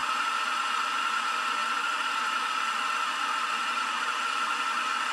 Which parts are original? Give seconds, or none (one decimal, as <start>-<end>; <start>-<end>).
0.0-1.6

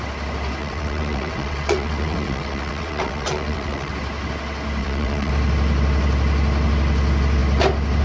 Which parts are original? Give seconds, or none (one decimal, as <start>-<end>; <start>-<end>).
0.0-0.6; 3.9-4.8; 5.3-8.0

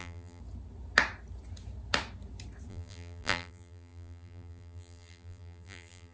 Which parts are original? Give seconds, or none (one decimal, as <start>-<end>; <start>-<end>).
0.4-2.7

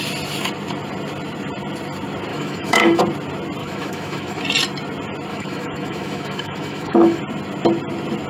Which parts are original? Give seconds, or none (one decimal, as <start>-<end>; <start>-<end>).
0.0-2.3; 3.0-3.6; 4.4-5.3; 7.2-8.3